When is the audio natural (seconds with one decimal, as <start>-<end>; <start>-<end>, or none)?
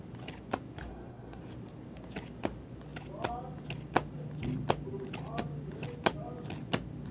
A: 0.0-0.9; 1.4-7.1